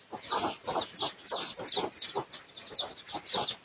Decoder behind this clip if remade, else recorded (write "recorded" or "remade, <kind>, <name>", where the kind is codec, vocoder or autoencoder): recorded